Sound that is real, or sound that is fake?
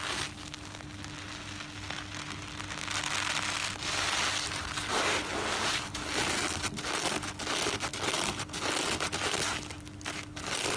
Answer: real